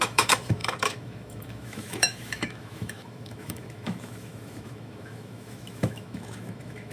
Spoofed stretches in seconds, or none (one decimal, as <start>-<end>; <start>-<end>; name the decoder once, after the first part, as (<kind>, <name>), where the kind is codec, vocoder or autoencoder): 0.0-6.9 (autoencoder, DAC-VAE)